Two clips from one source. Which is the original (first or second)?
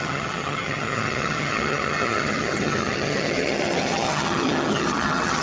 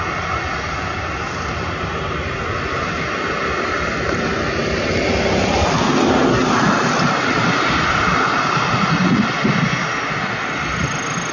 second